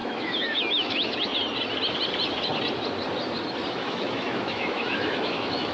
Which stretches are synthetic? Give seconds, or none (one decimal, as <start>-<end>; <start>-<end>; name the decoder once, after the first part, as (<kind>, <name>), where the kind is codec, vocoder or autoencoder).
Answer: 0.0-1.3 (autoencoder, DAC-VAE); 3.7-5.7